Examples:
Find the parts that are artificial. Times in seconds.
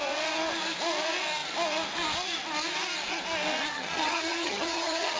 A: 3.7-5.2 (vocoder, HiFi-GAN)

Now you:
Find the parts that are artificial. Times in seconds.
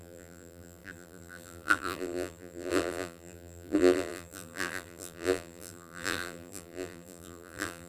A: 0.0-7.9 (vocoder, BigVGAN v2)